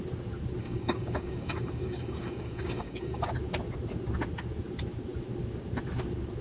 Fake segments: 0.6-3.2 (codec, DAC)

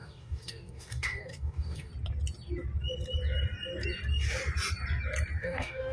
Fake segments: 0.0-1.9 (codec, DAC); 5.4-5.9